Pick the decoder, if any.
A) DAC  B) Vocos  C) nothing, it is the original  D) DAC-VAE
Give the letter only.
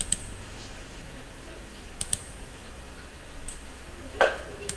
D